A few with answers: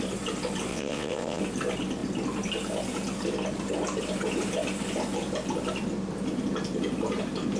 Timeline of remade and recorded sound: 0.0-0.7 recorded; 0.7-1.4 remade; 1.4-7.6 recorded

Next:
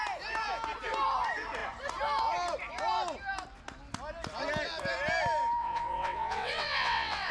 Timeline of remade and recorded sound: 0.0-5.6 recorded; 5.6-7.3 remade